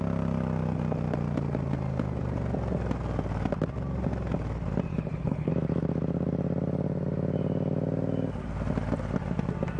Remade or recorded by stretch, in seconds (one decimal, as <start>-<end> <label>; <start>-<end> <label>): 0.0-4.9 recorded; 4.9-5.5 remade; 5.5-9.8 recorded